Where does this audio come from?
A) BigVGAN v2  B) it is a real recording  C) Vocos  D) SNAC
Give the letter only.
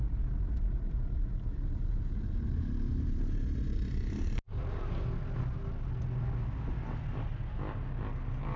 B